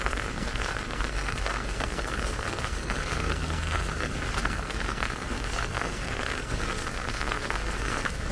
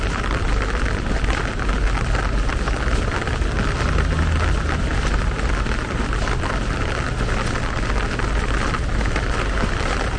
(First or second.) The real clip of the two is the second